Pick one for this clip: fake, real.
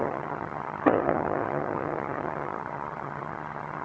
fake